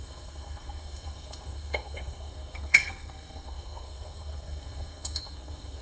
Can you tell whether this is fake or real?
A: fake